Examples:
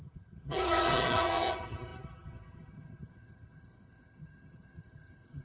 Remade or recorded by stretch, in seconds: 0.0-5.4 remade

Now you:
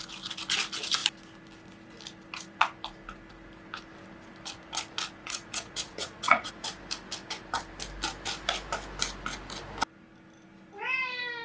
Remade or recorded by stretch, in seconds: 0.0-5.2 recorded; 5.2-6.5 remade; 6.5-11.4 recorded

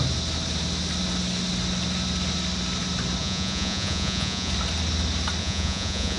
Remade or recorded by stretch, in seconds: 0.0-3.2 recorded; 3.2-4.5 remade; 4.5-5.4 recorded; 5.4-6.2 remade

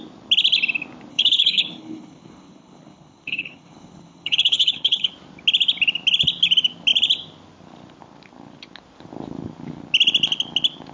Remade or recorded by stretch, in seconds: 0.0-1.1 recorded; 1.1-5.1 remade; 5.1-10.9 recorded

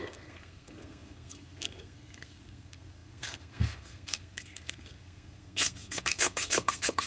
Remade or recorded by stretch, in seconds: 0.0-7.1 remade

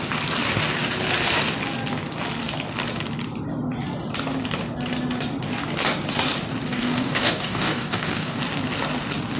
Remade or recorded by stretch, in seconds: 0.0-6.7 recorded; 6.7-8.4 remade; 8.4-9.4 recorded

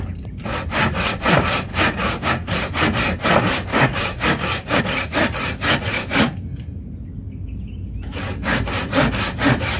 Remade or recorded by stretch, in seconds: 0.0-1.7 recorded; 1.7-2.3 remade; 2.3-3.7 recorded; 3.7-4.8 remade; 4.8-9.8 recorded

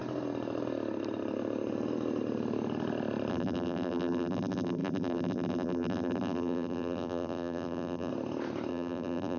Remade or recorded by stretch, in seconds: 0.0-3.3 recorded; 3.3-8.1 remade; 8.1-8.7 recorded; 8.7-9.4 remade